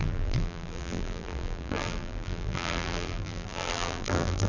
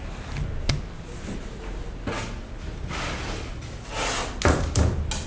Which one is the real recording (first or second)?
second